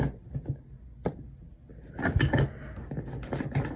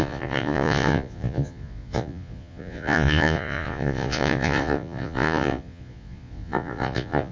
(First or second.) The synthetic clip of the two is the second